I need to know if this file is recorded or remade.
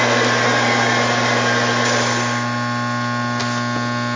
recorded